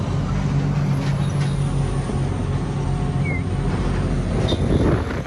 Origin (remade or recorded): recorded